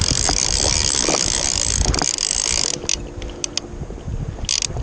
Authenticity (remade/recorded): recorded